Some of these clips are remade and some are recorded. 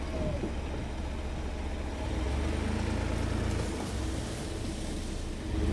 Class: recorded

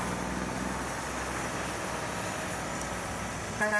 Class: recorded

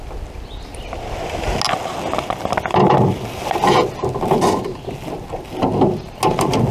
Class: recorded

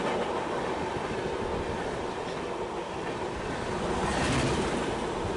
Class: recorded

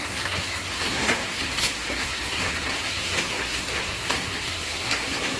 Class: remade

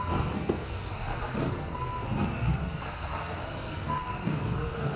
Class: remade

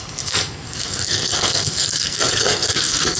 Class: remade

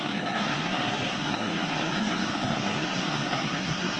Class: remade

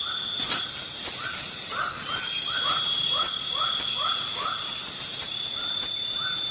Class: recorded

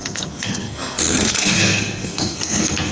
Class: remade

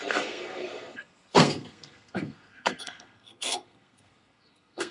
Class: remade